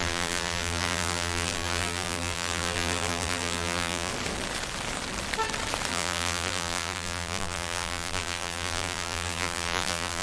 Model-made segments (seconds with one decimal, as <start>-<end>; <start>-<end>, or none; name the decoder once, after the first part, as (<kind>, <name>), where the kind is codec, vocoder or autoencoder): 0.0-4.1 (vocoder, BigVGAN v2); 5.9-10.2